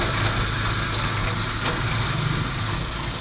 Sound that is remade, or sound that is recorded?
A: recorded